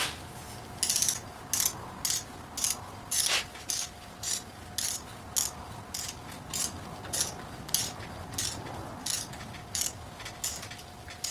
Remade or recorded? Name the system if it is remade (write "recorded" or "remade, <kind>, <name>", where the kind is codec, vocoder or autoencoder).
recorded